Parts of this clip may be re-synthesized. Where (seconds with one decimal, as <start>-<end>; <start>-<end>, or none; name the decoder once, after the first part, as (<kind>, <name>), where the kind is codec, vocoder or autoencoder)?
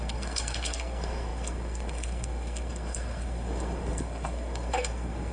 0.0-5.3 (codec, SNAC)